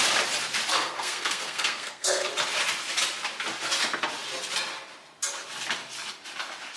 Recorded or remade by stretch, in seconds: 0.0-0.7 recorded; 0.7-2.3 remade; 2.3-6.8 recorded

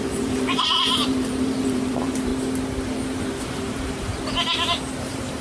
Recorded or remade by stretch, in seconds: 0.0-2.3 remade; 2.3-3.4 recorded; 3.4-4.1 remade; 4.1-5.0 recorded; 5.0-5.4 remade

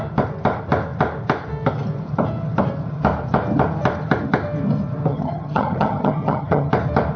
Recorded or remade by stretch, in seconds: 0.0-5.1 recorded; 5.1-6.7 remade; 6.7-7.2 recorded

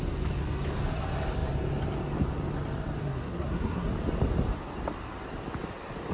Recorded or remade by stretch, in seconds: 0.0-3.0 recorded; 3.0-3.9 remade; 3.9-6.1 recorded

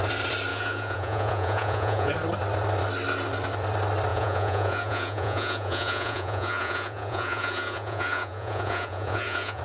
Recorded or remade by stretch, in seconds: 0.0-0.5 recorded; 0.5-2.1 remade; 2.1-4.1 recorded; 4.1-9.6 remade

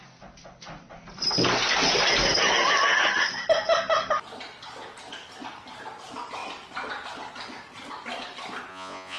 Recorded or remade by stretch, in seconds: 0.0-8.7 recorded; 8.7-9.2 remade

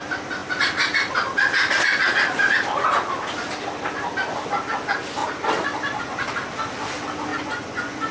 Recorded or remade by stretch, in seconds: 0.0-7.3 recorded; 7.3-8.1 remade

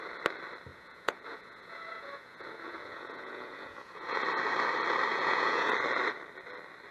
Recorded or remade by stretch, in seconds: 0.0-0.7 recorded; 0.7-4.2 remade; 4.2-5.1 recorded; 5.1-5.7 remade; 5.7-6.9 recorded